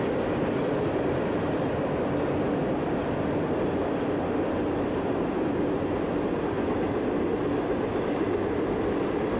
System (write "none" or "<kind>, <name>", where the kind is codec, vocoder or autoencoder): none